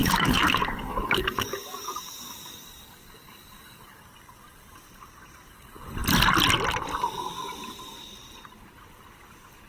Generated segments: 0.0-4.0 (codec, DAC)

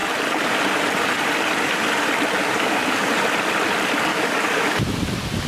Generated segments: 2.4-3.1 (codec, DAC); 4.1-4.8

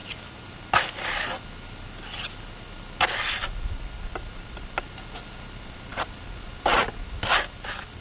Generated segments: none

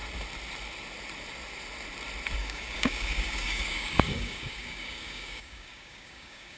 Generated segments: 2.4-6.6 (codec, DAC)

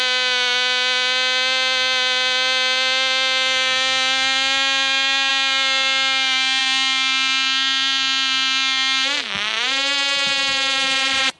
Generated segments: none

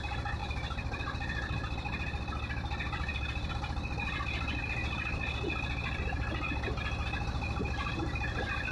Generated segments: none